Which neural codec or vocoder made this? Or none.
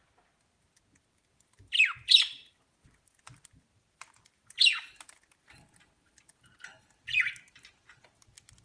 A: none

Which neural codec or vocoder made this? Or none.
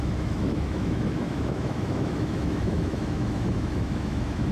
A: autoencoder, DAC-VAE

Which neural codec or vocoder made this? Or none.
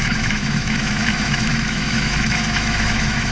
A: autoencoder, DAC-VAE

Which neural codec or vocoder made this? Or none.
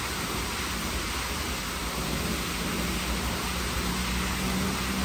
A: none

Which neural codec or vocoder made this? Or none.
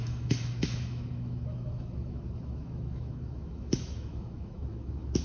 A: autoencoder, DAC-VAE